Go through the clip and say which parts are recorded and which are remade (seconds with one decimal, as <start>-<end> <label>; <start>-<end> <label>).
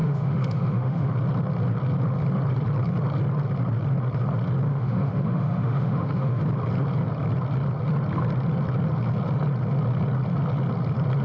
0.0-1.1 remade; 1.1-4.7 recorded; 4.7-6.4 remade; 6.4-11.2 recorded